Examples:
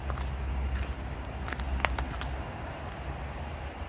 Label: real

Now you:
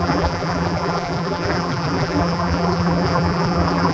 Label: fake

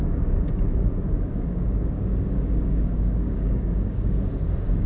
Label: fake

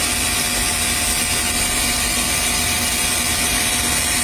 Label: real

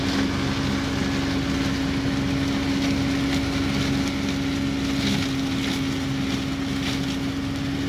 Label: real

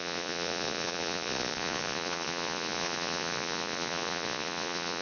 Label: fake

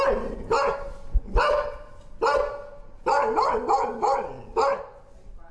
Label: real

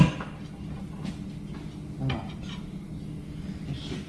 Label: real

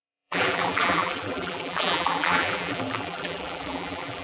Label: fake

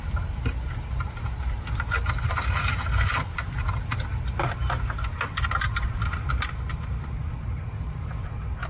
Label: real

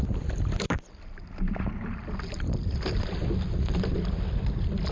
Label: real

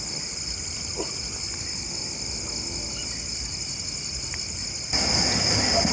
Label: real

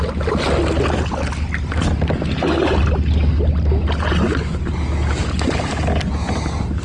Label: real